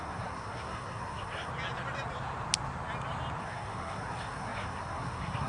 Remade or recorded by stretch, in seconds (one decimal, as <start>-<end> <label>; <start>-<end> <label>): 0.0-1.5 remade; 1.5-3.4 recorded; 3.4-5.5 remade